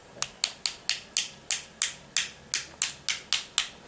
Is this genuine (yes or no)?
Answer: yes